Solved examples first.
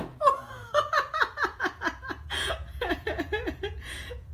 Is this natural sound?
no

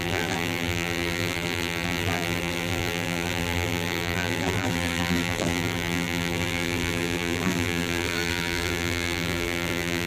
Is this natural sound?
no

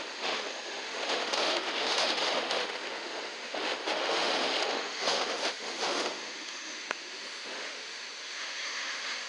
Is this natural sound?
no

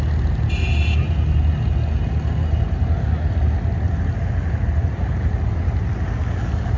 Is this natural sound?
yes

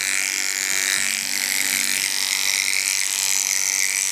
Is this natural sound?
yes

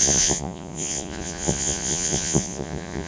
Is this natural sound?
no